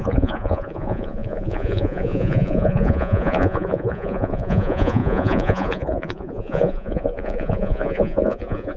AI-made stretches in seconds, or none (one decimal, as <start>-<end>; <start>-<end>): 0.0-8.8